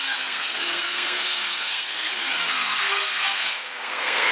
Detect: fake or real fake